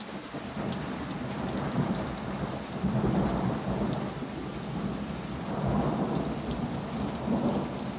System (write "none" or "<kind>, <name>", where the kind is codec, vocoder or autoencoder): none